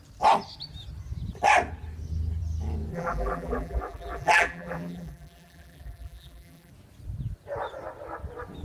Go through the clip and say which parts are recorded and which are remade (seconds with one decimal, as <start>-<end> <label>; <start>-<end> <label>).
0.0-2.9 recorded; 2.9-6.7 remade; 6.7-8.6 recorded